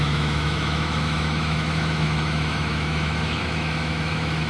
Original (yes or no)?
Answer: no